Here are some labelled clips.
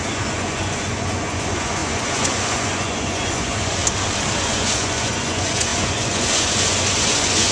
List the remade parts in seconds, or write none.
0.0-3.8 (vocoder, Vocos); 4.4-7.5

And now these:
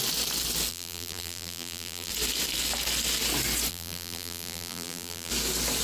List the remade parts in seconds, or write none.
0.7-2.1 (vocoder, BigVGAN v2); 3.7-5.3

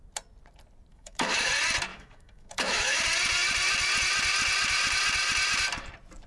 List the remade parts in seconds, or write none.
0.9-1.5 (autoencoder, DAC-VAE); 1.9-3.0

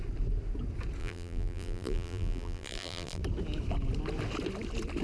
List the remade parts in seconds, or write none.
1.0-3.2 (vocoder, BigVGAN v2)

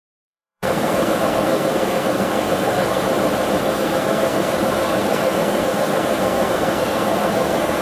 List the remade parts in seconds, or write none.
0.0-3.1 (codec, SNAC); 3.6-7.8

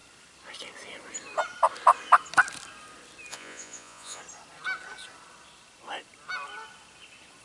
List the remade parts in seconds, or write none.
3.3-4.2 (vocoder, Vocos)

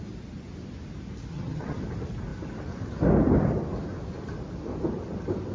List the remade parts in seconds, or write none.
1.3-1.8 (vocoder, HiFi-GAN)

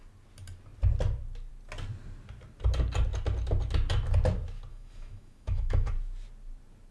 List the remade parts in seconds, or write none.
4.7-5.9 (autoencoder, DAC-VAE)